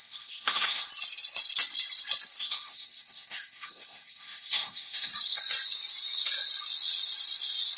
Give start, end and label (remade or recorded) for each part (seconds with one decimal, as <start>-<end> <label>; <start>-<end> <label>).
0.0-0.9 remade; 0.9-2.4 recorded; 2.4-5.1 remade; 5.1-7.8 recorded